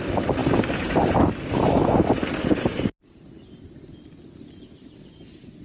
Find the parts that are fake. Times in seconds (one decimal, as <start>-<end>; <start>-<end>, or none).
none